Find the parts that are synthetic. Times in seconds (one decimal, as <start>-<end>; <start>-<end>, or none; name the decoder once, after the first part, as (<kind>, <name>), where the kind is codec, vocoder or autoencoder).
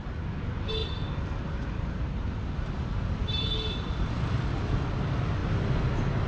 none